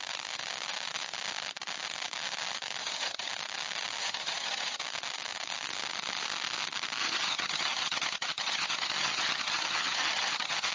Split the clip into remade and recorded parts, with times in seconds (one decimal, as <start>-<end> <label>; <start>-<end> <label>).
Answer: 0.0-2.8 recorded; 2.8-3.3 remade; 3.3-4.0 recorded; 4.0-4.8 remade; 4.8-7.0 recorded; 7.0-10.7 remade